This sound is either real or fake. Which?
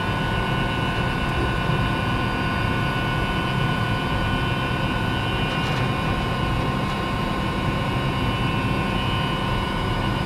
real